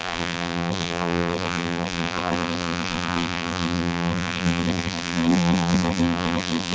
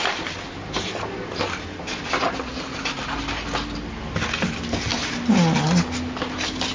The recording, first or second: second